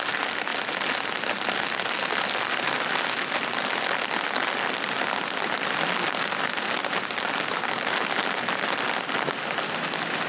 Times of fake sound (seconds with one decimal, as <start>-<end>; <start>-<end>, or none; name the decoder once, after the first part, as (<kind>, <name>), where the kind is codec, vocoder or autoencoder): none